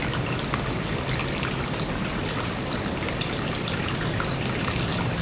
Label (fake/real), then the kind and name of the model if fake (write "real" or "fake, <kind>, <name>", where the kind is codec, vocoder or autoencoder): real